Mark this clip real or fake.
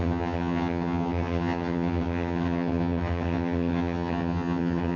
fake